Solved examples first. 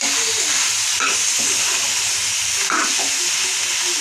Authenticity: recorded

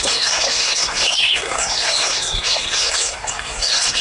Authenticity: remade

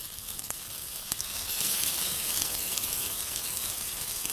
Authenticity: remade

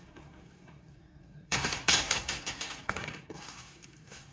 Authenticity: remade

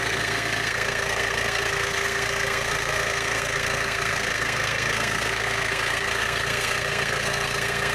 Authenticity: remade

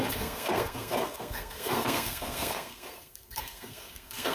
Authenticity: remade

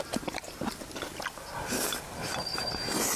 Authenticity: recorded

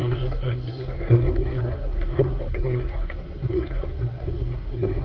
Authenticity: remade